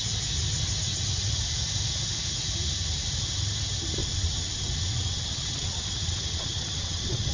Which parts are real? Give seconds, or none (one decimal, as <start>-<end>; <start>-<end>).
0.0-0.9; 1.4-4.0